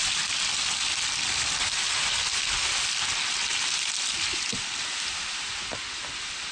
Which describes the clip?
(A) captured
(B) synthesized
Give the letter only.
A